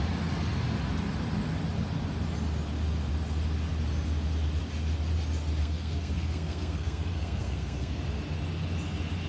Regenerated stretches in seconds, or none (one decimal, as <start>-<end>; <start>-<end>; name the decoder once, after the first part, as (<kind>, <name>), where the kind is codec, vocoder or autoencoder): 5.6-8.0 (codec, SNAC)